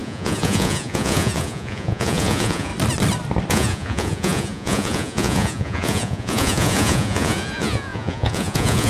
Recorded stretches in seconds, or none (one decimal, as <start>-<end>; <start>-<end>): 2.7-3.5